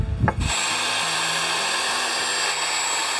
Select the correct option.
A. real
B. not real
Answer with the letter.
A